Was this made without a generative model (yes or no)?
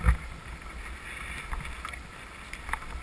yes